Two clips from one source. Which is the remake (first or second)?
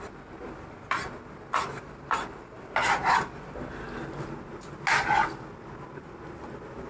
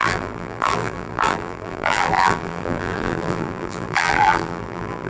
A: second